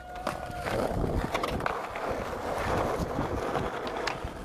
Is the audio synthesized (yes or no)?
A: no